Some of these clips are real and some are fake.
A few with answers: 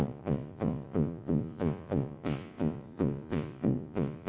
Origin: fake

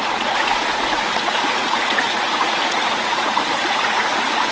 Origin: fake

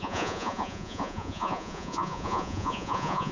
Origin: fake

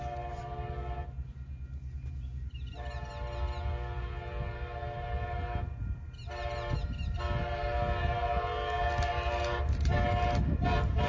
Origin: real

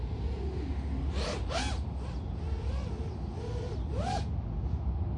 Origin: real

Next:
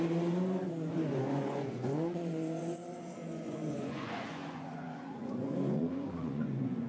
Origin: fake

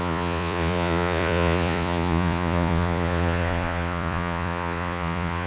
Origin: fake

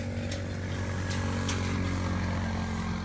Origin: real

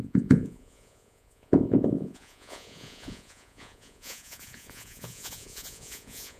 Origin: fake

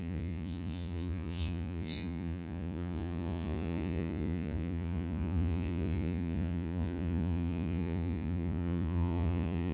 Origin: fake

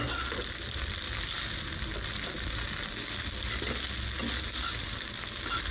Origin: real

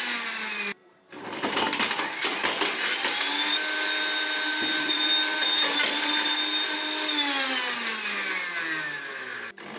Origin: real